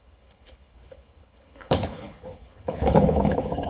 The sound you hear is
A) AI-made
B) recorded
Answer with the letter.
A